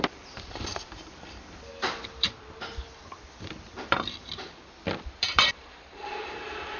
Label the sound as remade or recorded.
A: remade